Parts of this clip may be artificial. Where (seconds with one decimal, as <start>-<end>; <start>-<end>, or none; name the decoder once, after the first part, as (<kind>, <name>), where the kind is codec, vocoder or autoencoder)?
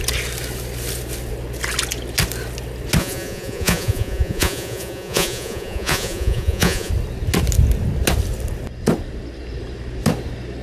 3.0-6.9 (vocoder, Vocos)